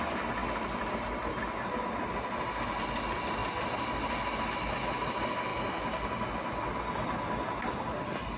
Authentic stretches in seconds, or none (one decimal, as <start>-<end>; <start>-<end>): 0.0-8.4